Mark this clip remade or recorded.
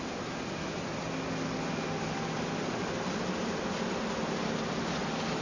recorded